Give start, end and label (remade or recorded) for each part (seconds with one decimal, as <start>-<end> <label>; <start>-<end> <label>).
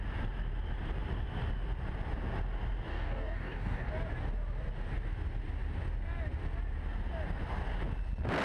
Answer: 0.0-2.9 recorded; 2.9-3.9 remade; 3.9-8.4 recorded